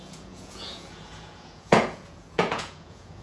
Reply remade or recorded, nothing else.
remade